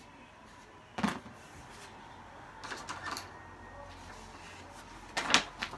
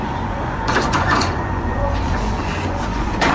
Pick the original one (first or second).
first